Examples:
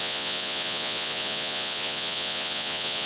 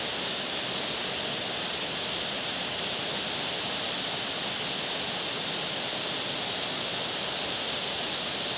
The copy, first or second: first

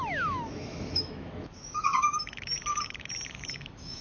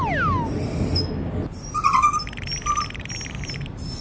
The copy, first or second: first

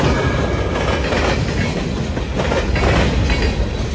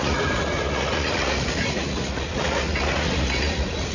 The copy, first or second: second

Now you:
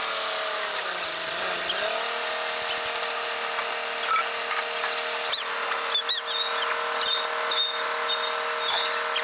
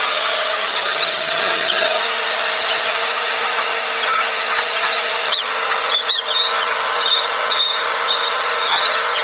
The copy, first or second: second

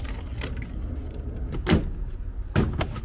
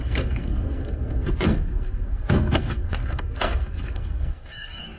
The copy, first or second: second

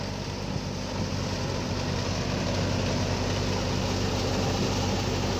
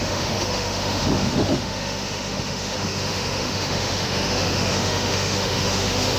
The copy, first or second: second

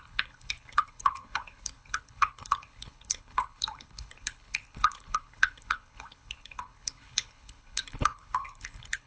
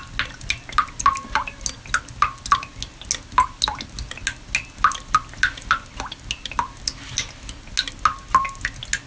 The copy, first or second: first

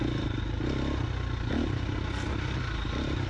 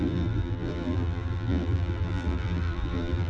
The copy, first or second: second